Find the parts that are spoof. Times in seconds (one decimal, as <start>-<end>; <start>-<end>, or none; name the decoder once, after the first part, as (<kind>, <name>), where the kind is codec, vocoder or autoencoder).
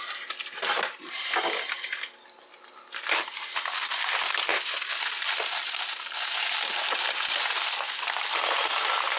none